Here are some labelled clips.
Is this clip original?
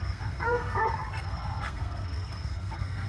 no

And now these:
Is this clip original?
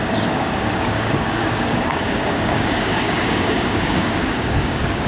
no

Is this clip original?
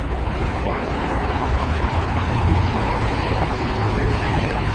no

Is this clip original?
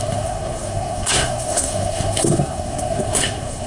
no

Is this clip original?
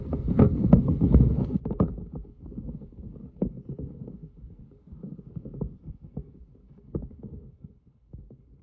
no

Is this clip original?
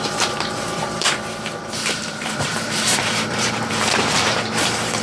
no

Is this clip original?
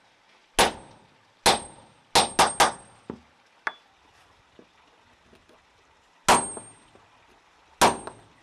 yes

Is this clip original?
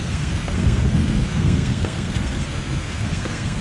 no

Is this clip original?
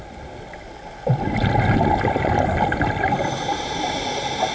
yes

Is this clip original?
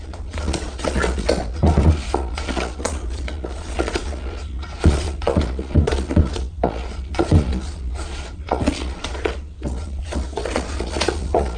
no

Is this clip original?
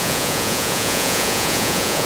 no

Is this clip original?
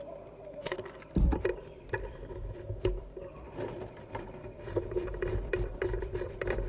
no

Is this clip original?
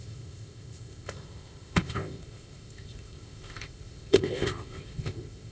no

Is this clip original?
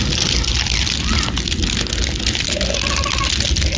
yes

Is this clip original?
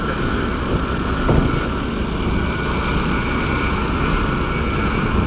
yes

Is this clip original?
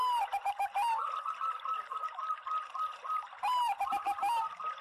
yes